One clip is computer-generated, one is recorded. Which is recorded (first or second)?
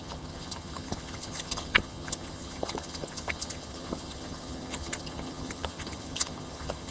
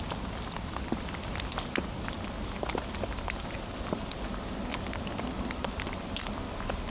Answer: second